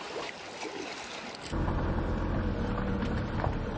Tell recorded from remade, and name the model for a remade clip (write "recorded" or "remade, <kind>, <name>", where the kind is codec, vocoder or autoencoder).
recorded